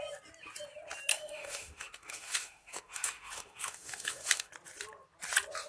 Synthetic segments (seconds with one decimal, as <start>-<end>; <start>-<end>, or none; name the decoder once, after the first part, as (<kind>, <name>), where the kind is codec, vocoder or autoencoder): 1.1-4.5 (autoencoder, DAC-VAE)